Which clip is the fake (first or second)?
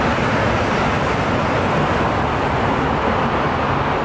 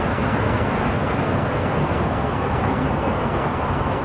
second